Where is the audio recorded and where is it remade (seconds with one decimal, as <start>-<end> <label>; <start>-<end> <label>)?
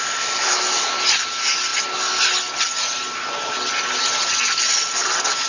0.0-5.5 recorded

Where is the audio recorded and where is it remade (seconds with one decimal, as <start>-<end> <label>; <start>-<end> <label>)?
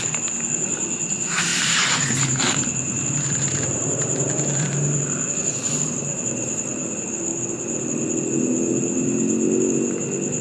0.0-1.5 recorded; 1.5-6.6 remade; 6.6-10.4 recorded